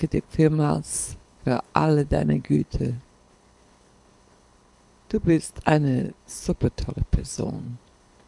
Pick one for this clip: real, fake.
fake